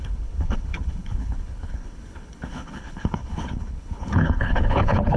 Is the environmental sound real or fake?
fake